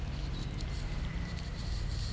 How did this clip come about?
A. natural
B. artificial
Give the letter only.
B